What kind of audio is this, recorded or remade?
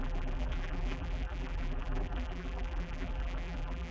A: remade